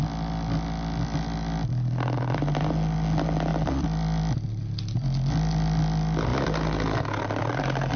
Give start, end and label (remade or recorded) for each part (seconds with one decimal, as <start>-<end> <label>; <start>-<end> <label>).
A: 0.0-8.0 recorded